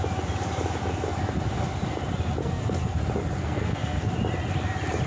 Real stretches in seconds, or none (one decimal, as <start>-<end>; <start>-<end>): 0.0-2.4; 3.0-3.4; 4.1-5.1